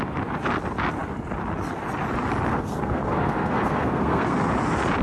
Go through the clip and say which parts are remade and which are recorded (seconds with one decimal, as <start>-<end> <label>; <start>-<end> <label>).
0.0-2.5 recorded; 2.5-4.5 remade; 4.5-5.0 recorded